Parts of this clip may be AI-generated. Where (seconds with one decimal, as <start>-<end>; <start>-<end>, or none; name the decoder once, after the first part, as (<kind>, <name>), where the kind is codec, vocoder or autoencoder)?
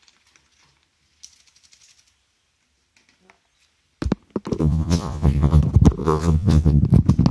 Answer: 4.6-5.6 (vocoder, Vocos); 6.0-6.8